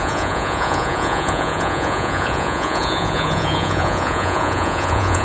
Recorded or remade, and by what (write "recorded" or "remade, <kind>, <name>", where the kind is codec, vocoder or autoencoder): remade, vocoder, Vocos